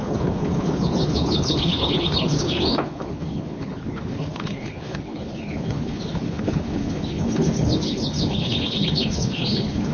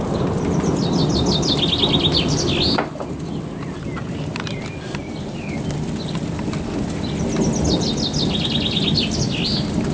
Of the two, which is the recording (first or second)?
second